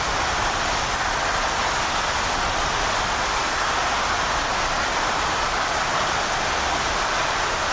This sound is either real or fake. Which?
real